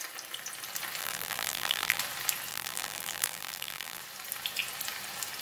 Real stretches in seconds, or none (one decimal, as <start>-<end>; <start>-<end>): 0.0-1.0; 2.0-2.5; 4.0-5.4